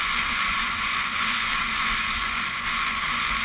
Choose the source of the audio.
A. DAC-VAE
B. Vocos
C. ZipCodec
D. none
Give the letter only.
B